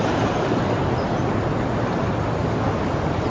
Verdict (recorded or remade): recorded